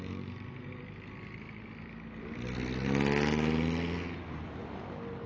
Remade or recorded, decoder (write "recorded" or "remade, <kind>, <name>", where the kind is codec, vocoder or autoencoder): recorded